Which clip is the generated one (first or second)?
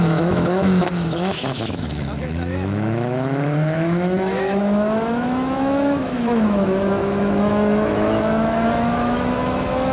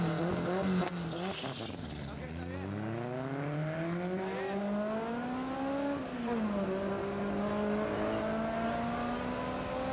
first